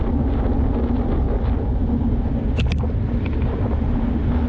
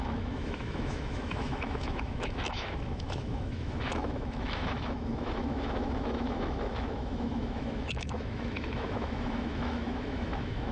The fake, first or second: second